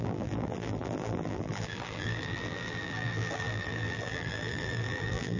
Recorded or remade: remade